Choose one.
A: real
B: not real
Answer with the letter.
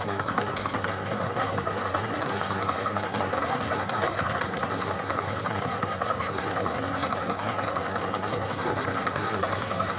B